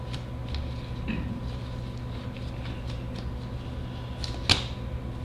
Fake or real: real